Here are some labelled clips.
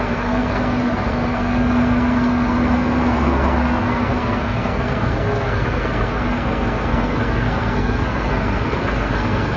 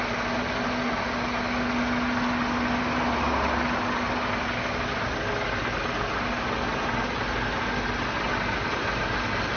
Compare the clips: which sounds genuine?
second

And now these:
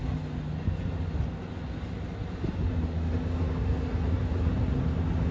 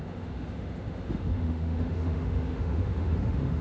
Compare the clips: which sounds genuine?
first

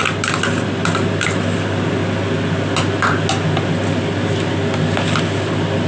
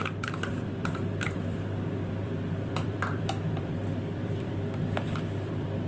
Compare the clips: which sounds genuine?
first